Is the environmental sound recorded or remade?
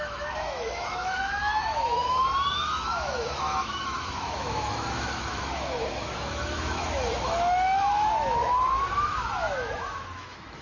remade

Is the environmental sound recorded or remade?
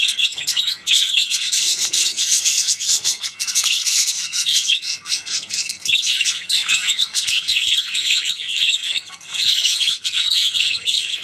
remade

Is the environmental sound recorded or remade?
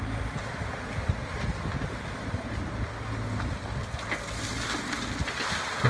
recorded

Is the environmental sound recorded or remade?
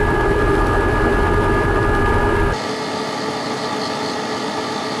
recorded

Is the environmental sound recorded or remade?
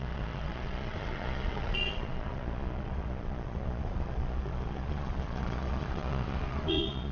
remade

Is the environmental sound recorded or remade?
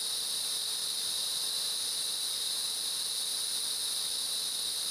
recorded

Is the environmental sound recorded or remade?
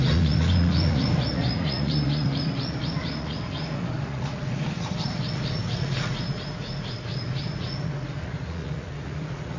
remade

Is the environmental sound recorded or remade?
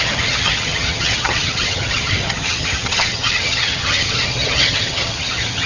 remade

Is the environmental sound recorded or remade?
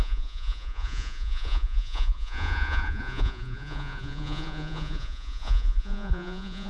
remade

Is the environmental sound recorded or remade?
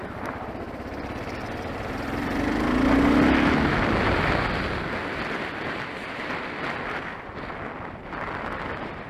recorded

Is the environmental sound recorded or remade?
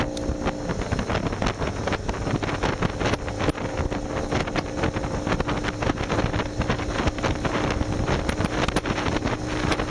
recorded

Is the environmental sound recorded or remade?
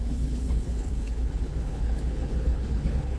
remade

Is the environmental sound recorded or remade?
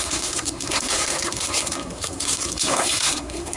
remade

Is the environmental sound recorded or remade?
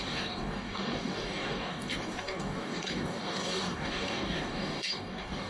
remade